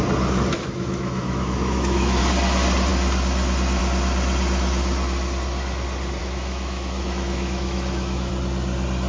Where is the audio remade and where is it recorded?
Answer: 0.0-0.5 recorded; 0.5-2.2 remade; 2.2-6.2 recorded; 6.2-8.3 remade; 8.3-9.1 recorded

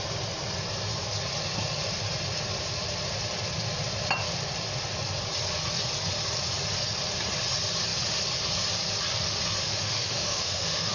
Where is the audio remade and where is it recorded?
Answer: 0.0-9.6 recorded; 9.6-10.9 remade

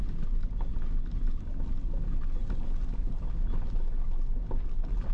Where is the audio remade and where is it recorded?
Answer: 0.0-5.1 recorded